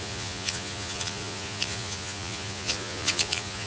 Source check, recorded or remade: remade